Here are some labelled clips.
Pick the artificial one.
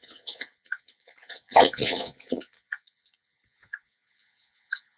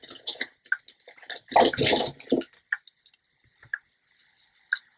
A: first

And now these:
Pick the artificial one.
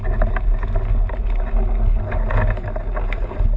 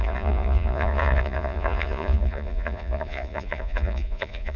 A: second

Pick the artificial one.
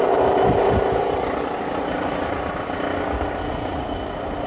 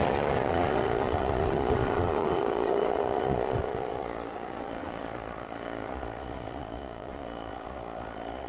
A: second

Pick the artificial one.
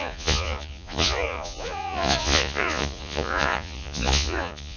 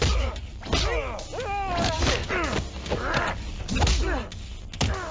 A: first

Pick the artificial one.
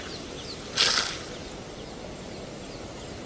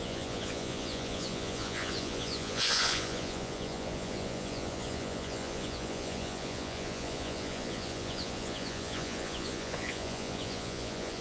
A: second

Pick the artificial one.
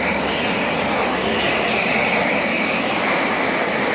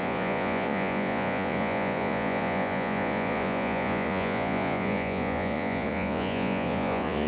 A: second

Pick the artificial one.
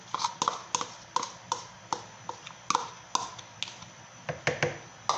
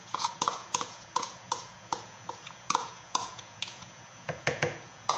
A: second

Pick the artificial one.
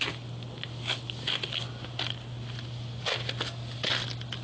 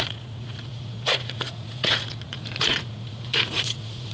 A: second